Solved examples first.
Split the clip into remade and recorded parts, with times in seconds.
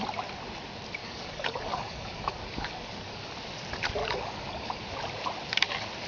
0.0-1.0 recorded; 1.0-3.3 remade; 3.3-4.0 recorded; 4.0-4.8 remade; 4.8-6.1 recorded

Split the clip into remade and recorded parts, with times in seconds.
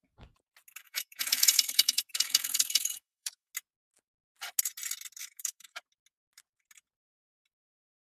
0.0-0.8 recorded; 0.8-3.5 remade; 3.5-5.2 recorded; 5.2-5.8 remade; 5.8-8.1 recorded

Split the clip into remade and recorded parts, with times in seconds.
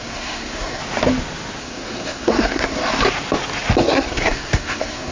0.0-0.8 remade; 0.8-1.6 recorded; 1.6-2.8 remade; 2.8-3.8 recorded; 3.8-5.1 remade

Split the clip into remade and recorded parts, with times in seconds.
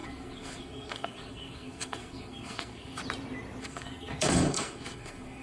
0.0-3.0 remade; 3.0-3.6 recorded; 3.6-5.4 remade